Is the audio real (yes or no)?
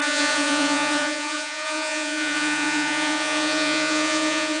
no